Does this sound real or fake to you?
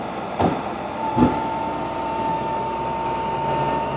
real